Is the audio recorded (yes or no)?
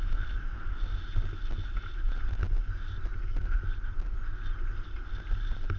yes